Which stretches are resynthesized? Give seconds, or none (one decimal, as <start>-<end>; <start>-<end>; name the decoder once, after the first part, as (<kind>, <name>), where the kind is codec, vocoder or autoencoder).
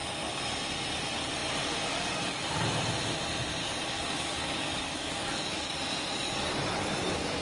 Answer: 3.6-5.8 (codec, DAC)